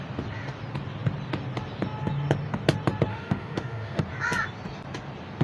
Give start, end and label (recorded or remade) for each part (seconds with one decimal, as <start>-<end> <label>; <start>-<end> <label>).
0.0-3.1 recorded; 3.1-4.0 remade; 4.0-5.4 recorded